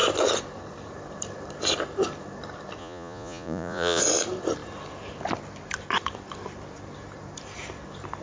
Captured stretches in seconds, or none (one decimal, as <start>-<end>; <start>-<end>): 0.0-2.8; 4.0-8.2